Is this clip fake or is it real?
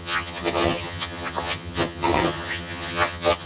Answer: fake